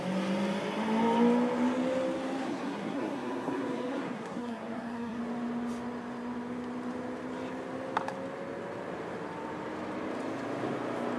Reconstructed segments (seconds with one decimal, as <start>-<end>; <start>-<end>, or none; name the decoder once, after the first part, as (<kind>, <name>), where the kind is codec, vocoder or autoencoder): 2.4-5.2 (codec, SNAC)